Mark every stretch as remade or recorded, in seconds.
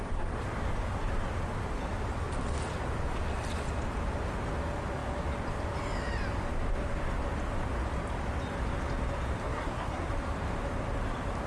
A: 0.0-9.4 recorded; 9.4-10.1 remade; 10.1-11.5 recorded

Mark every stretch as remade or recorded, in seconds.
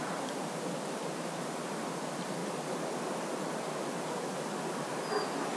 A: 0.0-5.6 recorded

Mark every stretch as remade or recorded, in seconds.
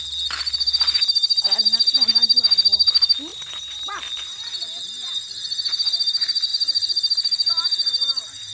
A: 0.0-3.3 recorded; 3.3-4.1 remade; 4.1-6.5 recorded; 6.5-7.5 remade; 7.5-8.5 recorded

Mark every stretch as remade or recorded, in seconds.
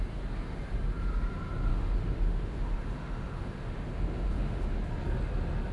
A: 0.0-1.7 recorded; 1.7-4.8 remade; 4.8-5.7 recorded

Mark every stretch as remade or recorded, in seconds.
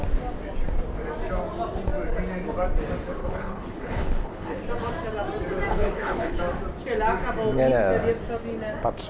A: 0.0-3.2 recorded; 3.2-4.6 remade; 4.6-5.7 recorded; 5.7-6.4 remade; 6.4-9.1 recorded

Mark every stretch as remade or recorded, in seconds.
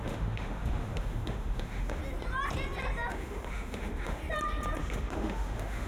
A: 0.0-2.0 remade; 2.0-3.1 recorded; 3.1-4.2 remade; 4.2-4.8 recorded; 4.8-5.9 remade